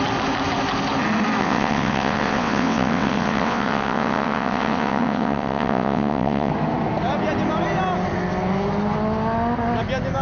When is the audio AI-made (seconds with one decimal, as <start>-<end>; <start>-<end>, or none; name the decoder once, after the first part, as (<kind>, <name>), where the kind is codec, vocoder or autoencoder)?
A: 1.4-6.5 (vocoder, WaveNeXt)